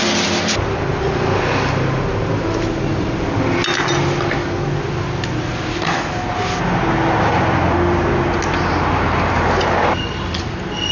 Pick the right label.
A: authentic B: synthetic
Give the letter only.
A